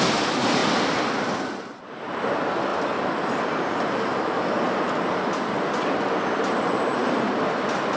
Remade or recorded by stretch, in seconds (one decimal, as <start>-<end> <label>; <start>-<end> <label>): 0.0-8.0 recorded